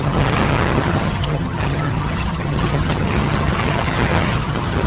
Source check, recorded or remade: remade